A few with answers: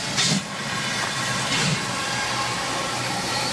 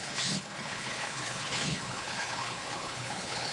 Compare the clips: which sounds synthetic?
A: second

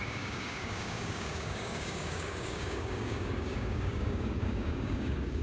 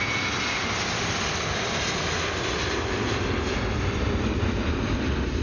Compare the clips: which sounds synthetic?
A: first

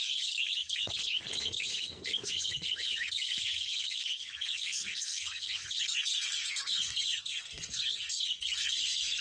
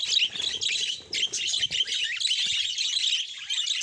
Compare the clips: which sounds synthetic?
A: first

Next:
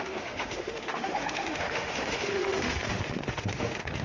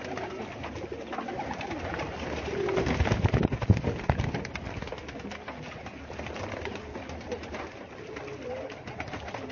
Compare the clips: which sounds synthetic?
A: first